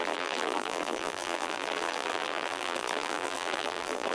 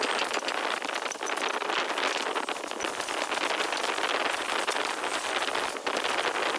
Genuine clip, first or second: second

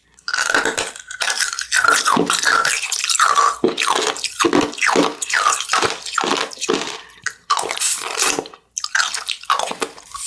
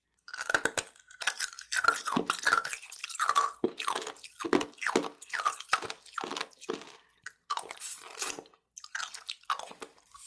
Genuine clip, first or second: second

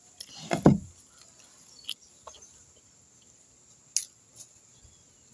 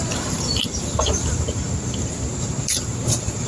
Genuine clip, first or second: first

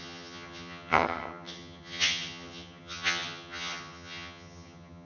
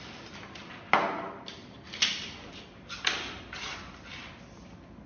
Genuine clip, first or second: second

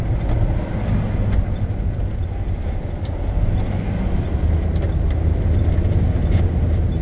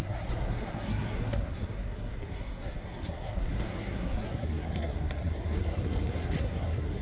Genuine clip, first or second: first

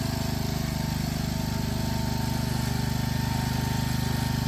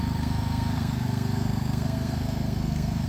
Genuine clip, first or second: first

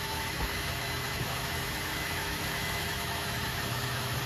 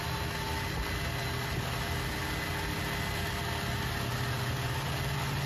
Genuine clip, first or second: second